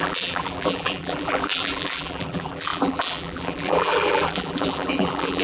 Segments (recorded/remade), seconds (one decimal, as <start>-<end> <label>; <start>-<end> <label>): 0.0-5.4 remade